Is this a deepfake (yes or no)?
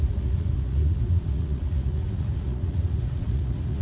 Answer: yes